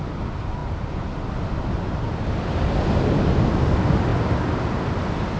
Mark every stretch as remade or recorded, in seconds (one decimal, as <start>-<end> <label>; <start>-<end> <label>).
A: 0.0-5.4 recorded